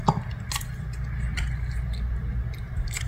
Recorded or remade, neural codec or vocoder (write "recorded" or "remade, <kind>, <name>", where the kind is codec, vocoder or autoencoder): recorded